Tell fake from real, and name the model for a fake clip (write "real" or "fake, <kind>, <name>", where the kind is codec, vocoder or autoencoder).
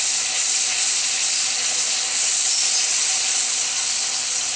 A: real